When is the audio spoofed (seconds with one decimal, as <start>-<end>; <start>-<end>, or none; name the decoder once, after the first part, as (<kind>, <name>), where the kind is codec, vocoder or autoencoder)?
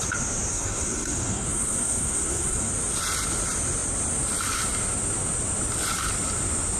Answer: 0.5-2.7 (codec, SNAC)